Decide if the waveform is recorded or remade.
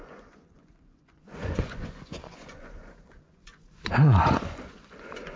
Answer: remade